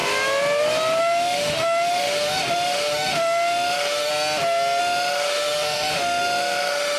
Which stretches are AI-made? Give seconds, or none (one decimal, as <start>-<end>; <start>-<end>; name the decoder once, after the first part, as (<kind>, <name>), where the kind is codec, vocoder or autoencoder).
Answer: 1.0-4.1 (autoencoder, DAC-VAE); 4.8-7.0